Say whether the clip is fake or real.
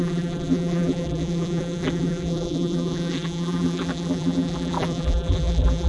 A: fake